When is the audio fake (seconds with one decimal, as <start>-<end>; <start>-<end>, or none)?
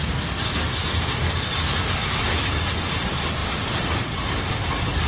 3.4-4.5